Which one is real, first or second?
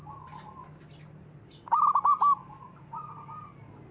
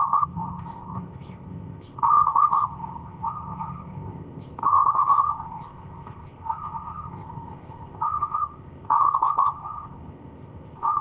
first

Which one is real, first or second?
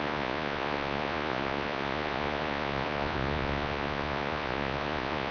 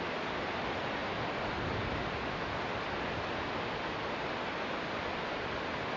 second